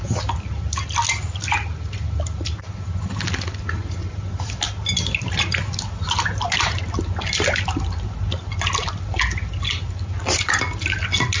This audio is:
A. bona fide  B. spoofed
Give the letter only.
A